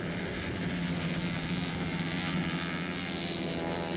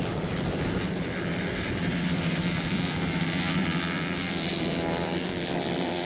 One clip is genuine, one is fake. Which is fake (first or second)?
second